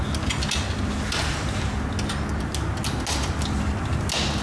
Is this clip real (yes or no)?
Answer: yes